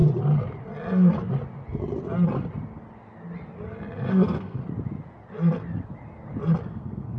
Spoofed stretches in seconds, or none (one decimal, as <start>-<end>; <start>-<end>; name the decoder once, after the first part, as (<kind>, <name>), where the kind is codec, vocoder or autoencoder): 4.1-4.6 (codec, SNAC); 6.7-7.2